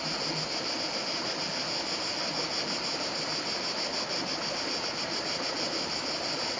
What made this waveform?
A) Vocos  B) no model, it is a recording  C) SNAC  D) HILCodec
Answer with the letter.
B